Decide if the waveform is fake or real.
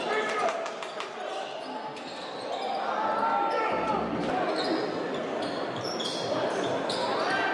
real